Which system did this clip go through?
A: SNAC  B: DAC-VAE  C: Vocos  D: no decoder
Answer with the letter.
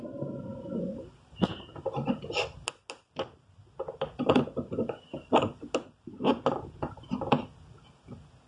D